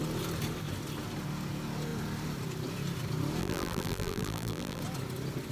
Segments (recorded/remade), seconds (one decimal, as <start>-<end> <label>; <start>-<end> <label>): 0.0-3.4 recorded; 3.4-4.8 remade; 4.8-5.5 recorded